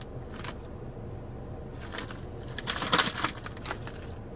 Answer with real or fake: real